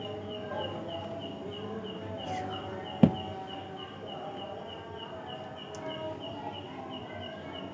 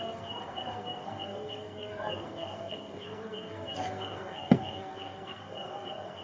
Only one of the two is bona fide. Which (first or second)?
first